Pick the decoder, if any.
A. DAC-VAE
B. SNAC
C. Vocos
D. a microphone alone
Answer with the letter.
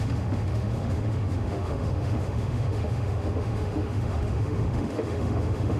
A